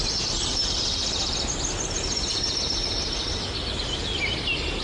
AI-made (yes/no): no